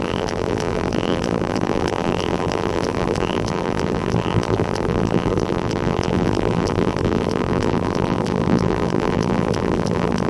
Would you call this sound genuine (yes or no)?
no